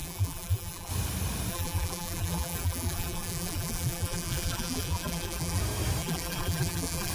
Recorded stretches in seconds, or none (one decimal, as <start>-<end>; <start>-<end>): 0.9-1.5; 5.6-6.0